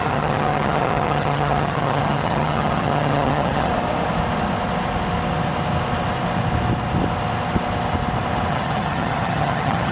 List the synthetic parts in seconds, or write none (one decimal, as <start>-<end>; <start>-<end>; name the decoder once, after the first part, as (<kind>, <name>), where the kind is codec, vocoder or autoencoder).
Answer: 0.0-3.7 (vocoder, HiFi-GAN); 8.5-9.9